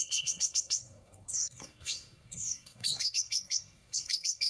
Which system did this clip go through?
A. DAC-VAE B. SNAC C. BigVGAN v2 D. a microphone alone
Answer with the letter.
B